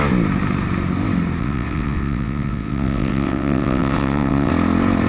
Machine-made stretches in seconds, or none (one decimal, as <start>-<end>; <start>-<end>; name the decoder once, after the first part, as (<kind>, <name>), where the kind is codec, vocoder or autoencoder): 1.4-4.5 (vocoder, WaveNeXt)